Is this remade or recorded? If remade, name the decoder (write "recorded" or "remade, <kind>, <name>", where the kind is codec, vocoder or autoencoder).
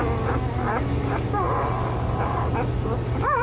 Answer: recorded